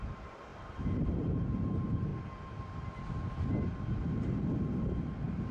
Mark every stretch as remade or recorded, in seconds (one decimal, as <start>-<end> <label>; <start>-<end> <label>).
0.0-2.1 remade; 2.1-5.5 recorded